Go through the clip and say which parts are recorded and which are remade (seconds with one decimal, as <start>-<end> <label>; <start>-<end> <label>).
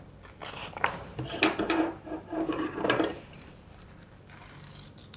0.0-0.6 recorded; 0.6-3.6 remade; 3.6-5.2 recorded